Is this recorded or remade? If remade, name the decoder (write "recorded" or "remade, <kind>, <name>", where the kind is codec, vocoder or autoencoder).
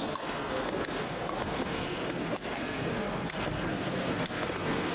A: remade, codec, SNAC